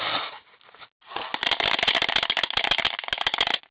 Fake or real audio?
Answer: real